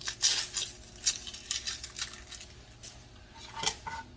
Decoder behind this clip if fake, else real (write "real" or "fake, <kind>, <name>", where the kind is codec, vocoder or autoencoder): real